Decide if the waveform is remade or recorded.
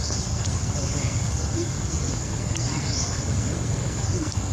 remade